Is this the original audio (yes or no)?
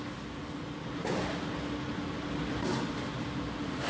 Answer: yes